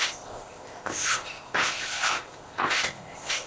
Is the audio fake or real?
fake